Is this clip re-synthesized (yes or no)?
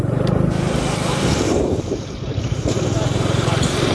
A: yes